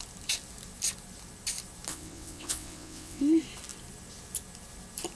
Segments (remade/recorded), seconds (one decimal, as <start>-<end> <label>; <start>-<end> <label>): 0.0-1.9 recorded; 1.9-3.2 remade; 3.2-5.2 recorded